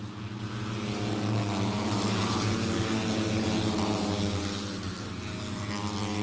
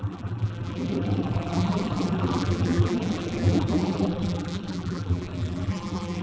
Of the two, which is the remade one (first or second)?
second